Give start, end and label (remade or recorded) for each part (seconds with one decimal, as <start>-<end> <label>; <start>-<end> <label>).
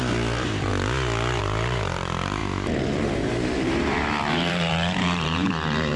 0.0-0.7 remade; 0.7-1.4 recorded; 1.4-6.0 remade